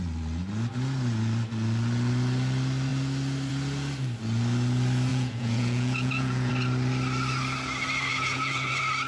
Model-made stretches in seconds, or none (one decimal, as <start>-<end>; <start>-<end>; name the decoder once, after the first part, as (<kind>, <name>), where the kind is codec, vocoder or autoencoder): 5.1-6.5 (vocoder, Vocos); 8.1-8.7